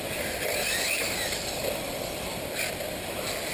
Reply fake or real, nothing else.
real